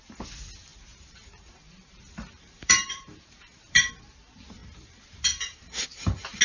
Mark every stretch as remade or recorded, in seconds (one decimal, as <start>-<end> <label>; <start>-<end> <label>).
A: 0.0-0.7 recorded; 0.7-3.9 remade; 3.9-4.6 recorded; 4.6-6.4 remade